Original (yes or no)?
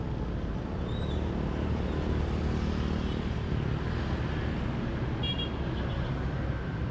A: yes